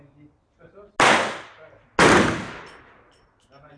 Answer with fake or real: real